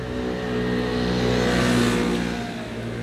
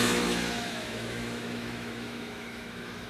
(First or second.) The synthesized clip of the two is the second